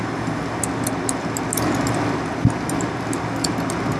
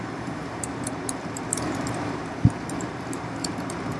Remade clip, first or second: second